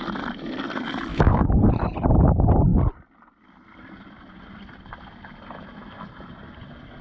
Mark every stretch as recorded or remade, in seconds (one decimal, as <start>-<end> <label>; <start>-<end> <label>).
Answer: 0.0-1.1 recorded; 1.1-1.7 remade; 1.7-7.0 recorded